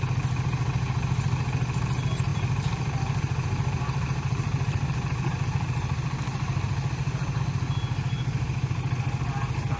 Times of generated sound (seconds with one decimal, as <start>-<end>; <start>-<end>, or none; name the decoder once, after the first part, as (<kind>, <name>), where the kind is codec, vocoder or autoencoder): 2.3-7.4 (vocoder, BigVGAN v2)